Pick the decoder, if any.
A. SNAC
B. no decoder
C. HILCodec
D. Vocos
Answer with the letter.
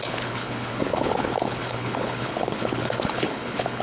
C